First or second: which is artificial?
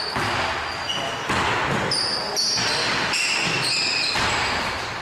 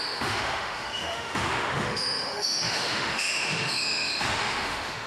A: second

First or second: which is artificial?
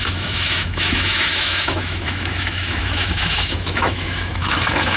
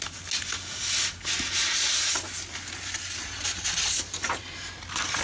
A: first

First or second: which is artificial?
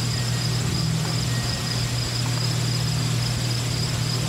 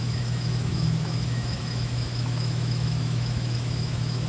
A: second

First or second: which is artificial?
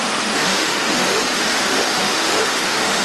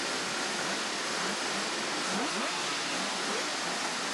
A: first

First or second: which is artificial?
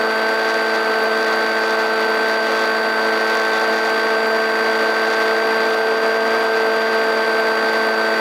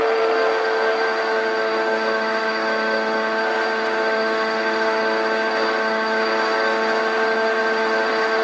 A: second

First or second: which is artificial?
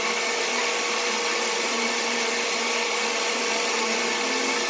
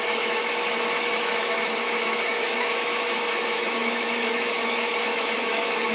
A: second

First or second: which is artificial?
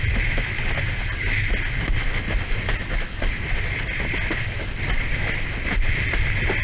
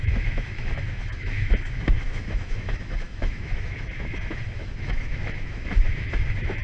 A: second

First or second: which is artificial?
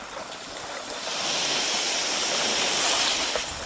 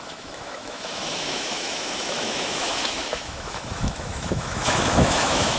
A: second